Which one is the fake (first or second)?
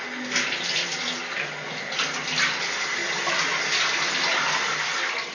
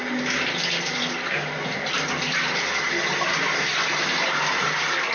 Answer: second